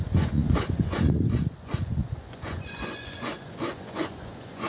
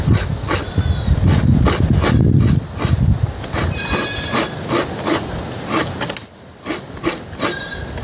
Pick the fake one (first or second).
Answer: first